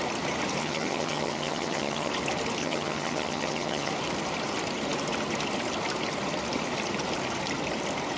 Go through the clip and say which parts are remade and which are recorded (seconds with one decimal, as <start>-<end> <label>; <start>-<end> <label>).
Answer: 0.0-0.6 recorded; 0.6-2.1 remade; 2.1-2.6 recorded; 2.6-3.9 remade; 3.9-8.2 recorded